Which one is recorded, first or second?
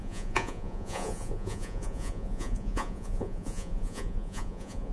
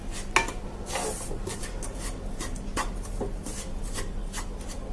second